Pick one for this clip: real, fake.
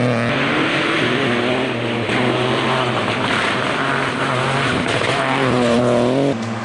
real